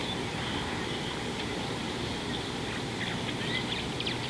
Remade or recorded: recorded